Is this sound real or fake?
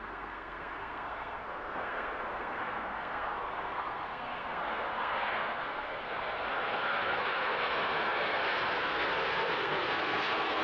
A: fake